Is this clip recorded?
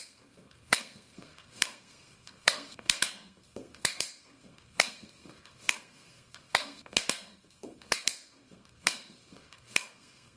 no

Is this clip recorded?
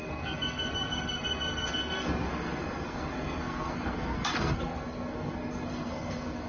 no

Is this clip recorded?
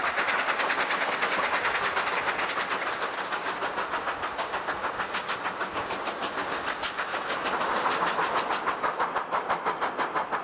yes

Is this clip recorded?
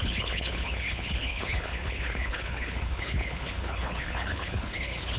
no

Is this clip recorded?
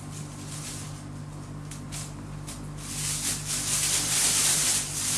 yes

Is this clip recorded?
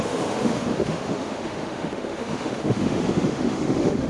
no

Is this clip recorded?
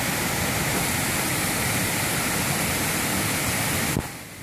yes